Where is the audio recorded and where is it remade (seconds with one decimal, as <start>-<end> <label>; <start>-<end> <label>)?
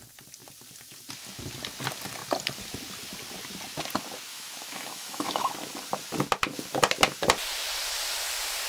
0.0-4.3 recorded; 4.3-5.5 remade; 5.5-8.7 recorded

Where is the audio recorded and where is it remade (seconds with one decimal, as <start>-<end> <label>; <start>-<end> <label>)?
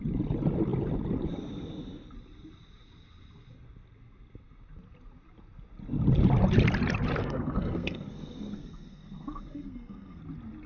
0.0-7.2 recorded; 7.2-10.2 remade; 10.2-10.7 recorded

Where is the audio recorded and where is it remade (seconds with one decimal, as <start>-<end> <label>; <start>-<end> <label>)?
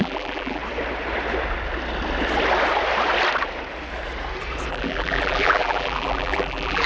0.0-0.6 remade; 0.6-4.7 recorded; 4.7-6.9 remade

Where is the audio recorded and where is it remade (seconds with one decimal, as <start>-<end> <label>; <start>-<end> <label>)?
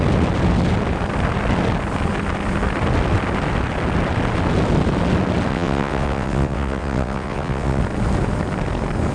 0.0-5.5 recorded; 5.5-7.8 remade; 7.8-9.1 recorded